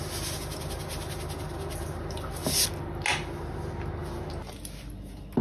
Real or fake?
real